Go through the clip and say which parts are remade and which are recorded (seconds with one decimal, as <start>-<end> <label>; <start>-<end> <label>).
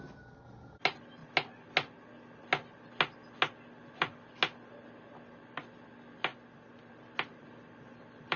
0.0-8.4 recorded